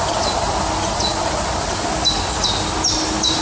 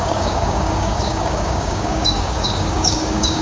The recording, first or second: first